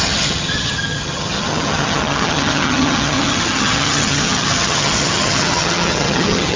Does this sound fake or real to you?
fake